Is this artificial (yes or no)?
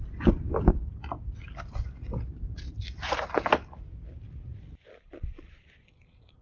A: no